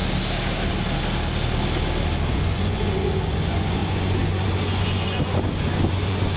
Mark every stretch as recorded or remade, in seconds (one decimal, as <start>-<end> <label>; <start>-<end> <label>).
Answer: 0.0-2.3 recorded; 2.3-6.4 remade